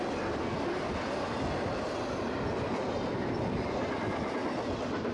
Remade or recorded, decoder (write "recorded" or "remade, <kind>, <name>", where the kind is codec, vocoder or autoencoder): recorded